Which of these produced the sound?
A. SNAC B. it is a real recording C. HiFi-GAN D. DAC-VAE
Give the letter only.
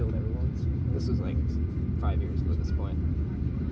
B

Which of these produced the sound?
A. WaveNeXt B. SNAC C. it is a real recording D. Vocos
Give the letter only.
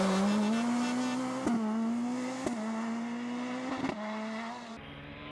C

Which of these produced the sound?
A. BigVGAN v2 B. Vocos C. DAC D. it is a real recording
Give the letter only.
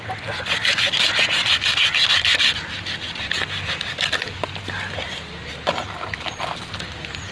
D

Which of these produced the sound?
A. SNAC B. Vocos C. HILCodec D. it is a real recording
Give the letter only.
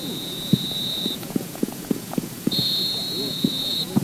B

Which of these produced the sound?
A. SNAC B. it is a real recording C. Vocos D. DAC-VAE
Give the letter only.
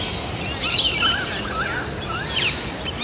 B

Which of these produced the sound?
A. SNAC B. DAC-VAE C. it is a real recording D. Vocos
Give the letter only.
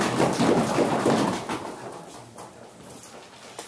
C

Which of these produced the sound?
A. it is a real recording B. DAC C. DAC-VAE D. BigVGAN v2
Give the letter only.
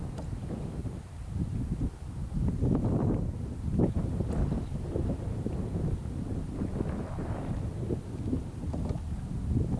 A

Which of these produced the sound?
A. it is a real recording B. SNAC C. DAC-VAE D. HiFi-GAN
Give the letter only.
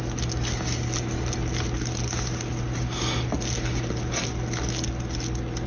A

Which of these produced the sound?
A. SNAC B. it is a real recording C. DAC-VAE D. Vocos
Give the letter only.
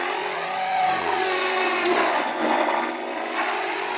D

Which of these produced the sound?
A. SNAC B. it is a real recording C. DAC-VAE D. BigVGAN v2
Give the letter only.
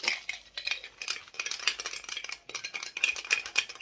B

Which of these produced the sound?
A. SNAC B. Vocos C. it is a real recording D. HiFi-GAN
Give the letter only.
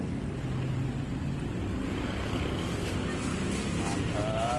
C